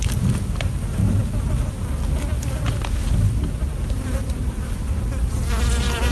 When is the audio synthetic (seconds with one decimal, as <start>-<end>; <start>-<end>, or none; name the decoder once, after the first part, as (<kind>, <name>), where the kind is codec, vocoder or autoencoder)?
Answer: 3.6-5.0 (vocoder, BigVGAN v2)